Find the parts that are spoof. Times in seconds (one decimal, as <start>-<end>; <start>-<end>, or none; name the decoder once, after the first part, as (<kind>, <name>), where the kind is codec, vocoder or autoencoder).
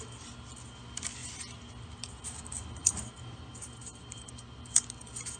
2.8-4.3 (vocoder, BigVGAN v2)